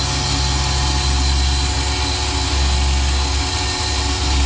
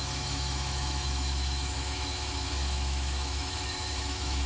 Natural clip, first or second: first